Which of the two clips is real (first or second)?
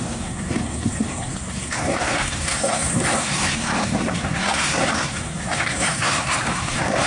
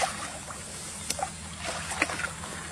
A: second